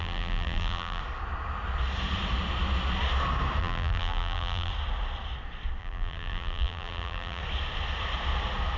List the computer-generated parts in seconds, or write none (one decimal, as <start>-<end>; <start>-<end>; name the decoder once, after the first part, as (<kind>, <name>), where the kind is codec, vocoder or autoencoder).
0.0-1.0 (vocoder, BigVGAN v2); 3.6-4.7; 5.8-7.4